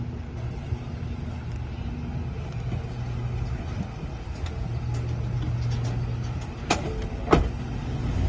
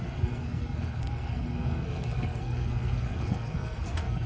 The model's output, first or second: second